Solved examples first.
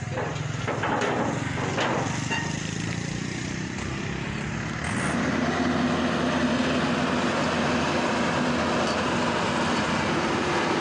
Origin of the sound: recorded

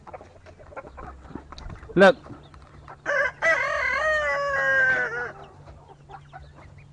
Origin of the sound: recorded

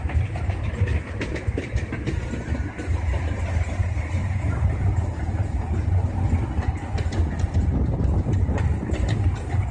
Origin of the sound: recorded